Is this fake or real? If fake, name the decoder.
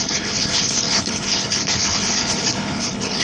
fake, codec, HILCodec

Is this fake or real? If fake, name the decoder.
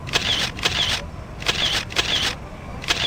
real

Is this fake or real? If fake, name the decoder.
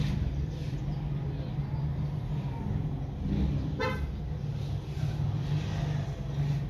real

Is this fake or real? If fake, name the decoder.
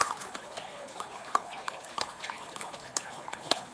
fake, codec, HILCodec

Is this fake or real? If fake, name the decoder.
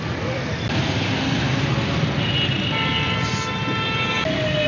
real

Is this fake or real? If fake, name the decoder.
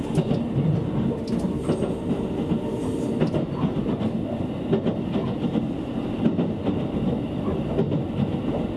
real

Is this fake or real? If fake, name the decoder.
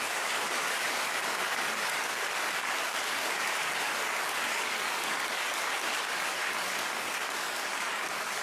fake, codec, DAC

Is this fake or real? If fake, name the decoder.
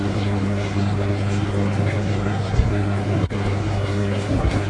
fake, codec, SNAC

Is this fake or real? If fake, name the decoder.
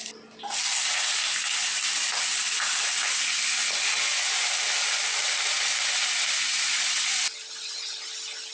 real